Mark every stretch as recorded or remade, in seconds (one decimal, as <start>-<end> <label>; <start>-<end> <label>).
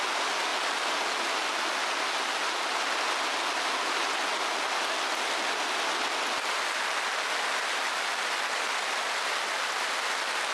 0.0-10.5 recorded